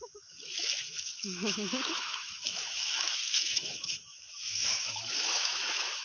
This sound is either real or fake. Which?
fake